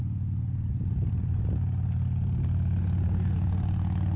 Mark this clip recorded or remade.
recorded